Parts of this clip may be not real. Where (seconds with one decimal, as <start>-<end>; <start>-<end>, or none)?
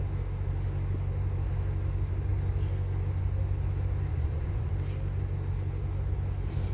4.1-4.7